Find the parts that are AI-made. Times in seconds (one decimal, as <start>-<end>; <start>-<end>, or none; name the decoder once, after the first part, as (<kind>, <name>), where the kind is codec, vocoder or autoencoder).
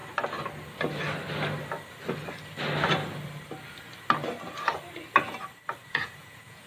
5.8-6.7 (vocoder, Vocos)